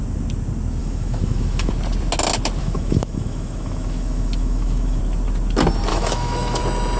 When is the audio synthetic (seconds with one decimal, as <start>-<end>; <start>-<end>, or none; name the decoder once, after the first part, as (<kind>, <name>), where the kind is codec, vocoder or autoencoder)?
0.8-1.7 (autoencoder, DAC-VAE); 2.6-5.0; 5.9-6.6